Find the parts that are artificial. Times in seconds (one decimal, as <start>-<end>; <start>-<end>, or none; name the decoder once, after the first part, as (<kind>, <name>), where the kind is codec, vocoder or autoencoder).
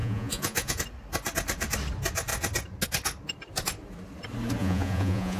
0.0-0.8 (vocoder, Vocos); 4.6-5.4